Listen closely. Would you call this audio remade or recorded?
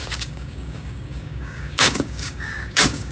remade